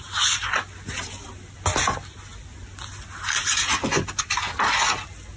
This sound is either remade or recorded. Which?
recorded